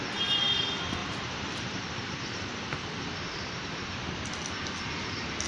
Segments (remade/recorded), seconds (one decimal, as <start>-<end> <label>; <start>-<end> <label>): 0.0-1.0 recorded; 1.0-4.3 remade; 4.3-5.5 recorded